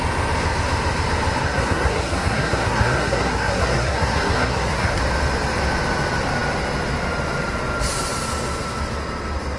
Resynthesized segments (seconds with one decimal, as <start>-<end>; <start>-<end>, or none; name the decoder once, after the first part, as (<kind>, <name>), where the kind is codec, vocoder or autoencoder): 1.4-5.0 (codec, SNAC)